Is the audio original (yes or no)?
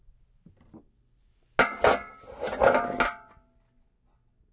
yes